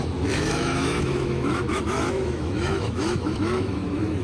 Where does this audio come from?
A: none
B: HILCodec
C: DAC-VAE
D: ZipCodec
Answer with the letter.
C